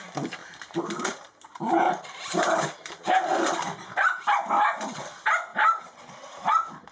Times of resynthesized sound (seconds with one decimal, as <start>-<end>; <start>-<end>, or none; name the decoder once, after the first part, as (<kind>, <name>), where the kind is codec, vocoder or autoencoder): 0.4-4.5 (vocoder, BigVGAN v2); 5.5-6.5